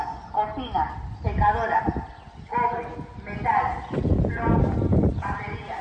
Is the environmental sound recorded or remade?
recorded